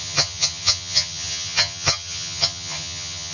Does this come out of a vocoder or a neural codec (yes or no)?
yes